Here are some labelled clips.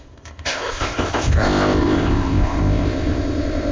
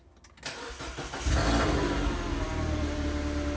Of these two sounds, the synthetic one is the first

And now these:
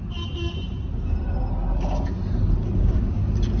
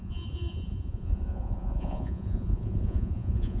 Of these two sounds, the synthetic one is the second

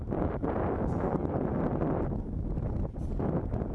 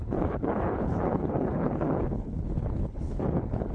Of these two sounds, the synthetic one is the second